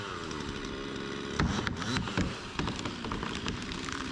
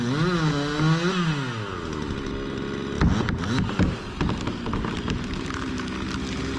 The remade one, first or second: first